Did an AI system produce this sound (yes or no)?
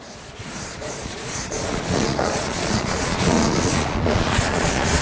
yes